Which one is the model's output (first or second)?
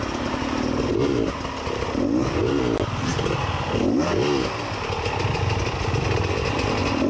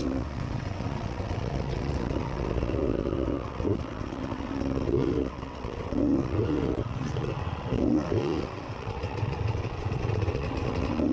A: second